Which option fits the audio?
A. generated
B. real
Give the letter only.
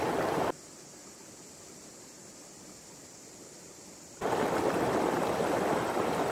B